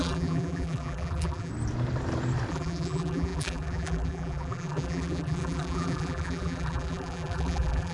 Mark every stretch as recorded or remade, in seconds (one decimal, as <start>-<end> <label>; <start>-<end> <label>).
0.0-1.5 remade; 1.5-2.5 recorded; 2.5-7.9 remade